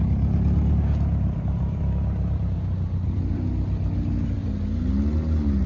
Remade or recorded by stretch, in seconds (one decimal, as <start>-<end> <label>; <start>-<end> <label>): 0.0-1.1 recorded; 1.1-4.5 remade; 4.5-5.7 recorded